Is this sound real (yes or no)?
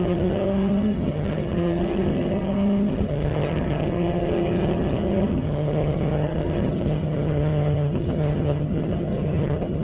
no